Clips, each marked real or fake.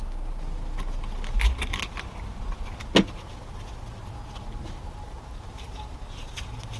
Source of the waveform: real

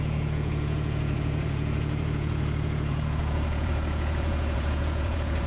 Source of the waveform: fake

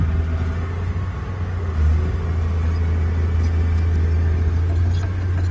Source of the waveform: real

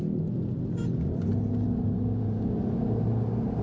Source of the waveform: real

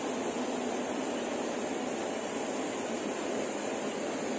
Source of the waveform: real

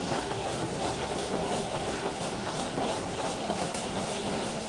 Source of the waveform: fake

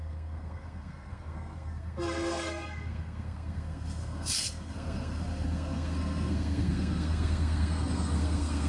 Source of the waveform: fake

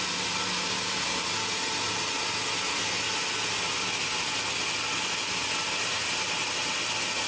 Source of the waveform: real